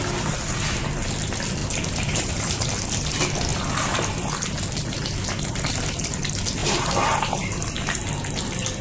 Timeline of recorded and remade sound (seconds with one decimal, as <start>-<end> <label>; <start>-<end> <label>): 0.0-1.6 recorded; 1.6-2.7 remade; 2.7-6.6 recorded; 6.6-7.2 remade; 7.2-8.8 recorded

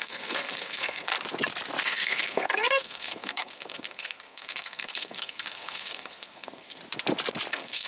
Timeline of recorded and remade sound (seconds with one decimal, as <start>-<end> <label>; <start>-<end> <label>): 0.0-1.1 remade; 1.1-1.8 recorded; 1.8-6.8 remade; 6.8-7.5 recorded; 7.5-7.9 remade

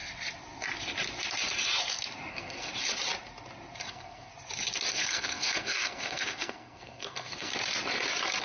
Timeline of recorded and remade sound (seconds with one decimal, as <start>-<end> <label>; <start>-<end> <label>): 0.0-2.3 recorded; 2.3-2.7 remade; 2.7-3.9 recorded; 3.9-4.3 remade; 4.3-4.9 recorded; 4.9-7.5 remade; 7.5-8.4 recorded

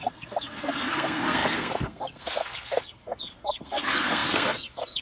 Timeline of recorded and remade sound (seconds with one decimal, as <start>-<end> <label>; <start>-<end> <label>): 0.0-5.0 remade